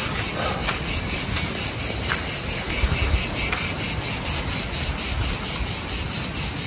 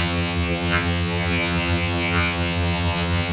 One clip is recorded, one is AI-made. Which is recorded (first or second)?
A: first